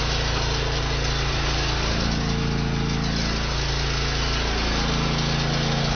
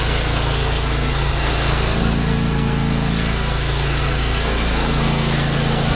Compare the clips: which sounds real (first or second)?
first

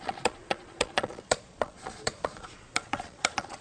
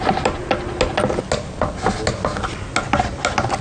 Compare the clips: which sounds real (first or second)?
second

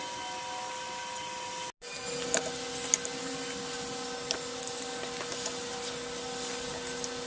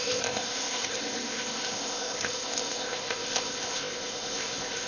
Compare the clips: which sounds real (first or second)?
first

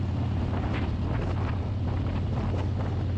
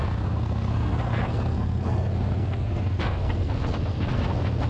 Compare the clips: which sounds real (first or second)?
first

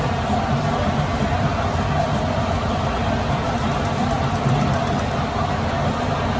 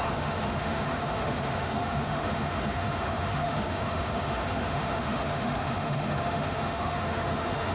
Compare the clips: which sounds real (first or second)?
first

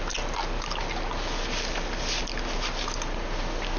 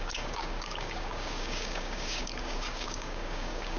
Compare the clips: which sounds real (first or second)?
first